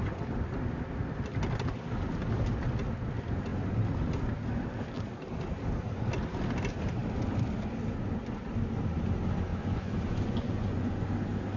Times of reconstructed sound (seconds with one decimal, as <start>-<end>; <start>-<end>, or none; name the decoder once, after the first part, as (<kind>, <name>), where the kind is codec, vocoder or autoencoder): 9.5-11.1 (vocoder, Vocos)